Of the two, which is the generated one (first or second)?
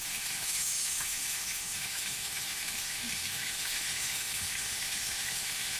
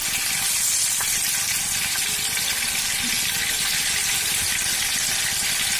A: first